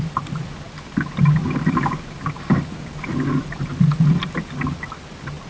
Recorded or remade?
recorded